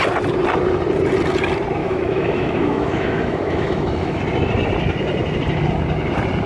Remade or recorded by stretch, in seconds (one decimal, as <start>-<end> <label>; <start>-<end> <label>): 0.0-1.8 recorded; 1.8-4.2 remade; 4.2-6.5 recorded